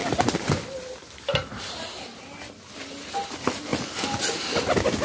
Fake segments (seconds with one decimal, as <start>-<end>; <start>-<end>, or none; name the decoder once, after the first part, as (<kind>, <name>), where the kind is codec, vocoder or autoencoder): 0.0-0.5 (vocoder, BigVGAN v2); 3.7-4.4